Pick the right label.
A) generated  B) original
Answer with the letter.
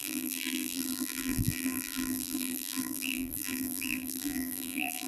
A